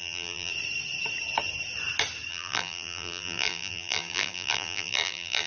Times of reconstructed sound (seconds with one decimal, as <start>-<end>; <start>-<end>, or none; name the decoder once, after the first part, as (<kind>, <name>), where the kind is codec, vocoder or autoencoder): 0.0-0.5 (vocoder, BigVGAN v2); 2.3-5.5